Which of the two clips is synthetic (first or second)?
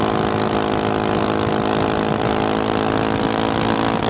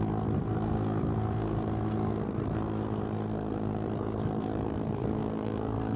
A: second